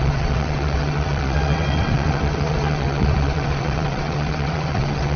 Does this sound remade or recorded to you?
remade